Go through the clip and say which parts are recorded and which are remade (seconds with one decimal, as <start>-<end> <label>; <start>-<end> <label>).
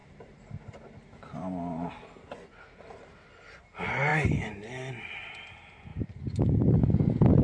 0.0-2.0 remade; 2.0-5.9 recorded; 5.9-6.8 remade; 6.8-7.4 recorded